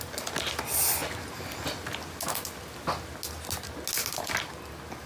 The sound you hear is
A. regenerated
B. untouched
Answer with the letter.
B